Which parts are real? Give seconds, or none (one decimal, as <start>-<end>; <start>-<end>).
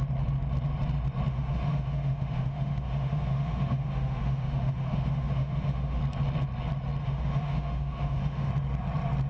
0.0-1.3; 6.0-7.0; 8.5-9.3